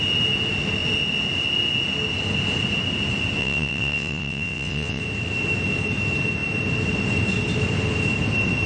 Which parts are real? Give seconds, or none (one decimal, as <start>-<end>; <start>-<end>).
0.0-3.4; 5.0-8.7